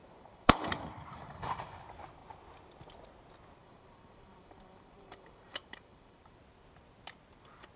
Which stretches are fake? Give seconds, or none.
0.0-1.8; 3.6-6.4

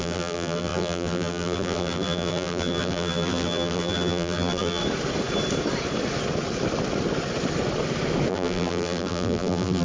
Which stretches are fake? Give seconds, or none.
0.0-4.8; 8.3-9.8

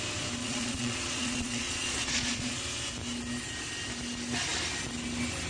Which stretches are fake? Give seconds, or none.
0.4-2.6

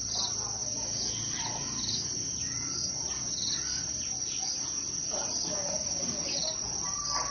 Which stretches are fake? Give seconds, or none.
none

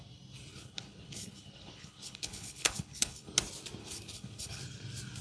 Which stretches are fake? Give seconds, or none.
0.5-3.3; 3.8-4.6